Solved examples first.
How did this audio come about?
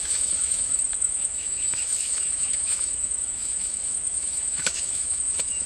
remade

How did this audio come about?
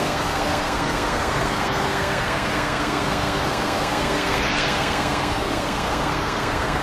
remade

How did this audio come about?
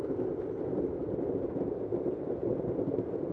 recorded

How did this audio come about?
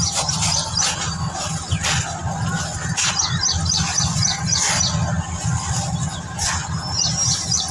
recorded